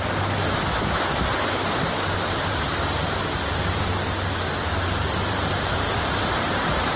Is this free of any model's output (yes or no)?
yes